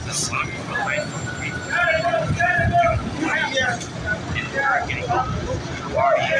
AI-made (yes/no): no